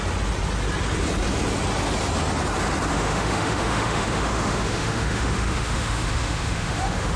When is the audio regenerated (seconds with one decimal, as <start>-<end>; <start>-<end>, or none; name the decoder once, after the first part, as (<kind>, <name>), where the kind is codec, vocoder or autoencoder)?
2.9-7.2 (autoencoder, DAC-VAE)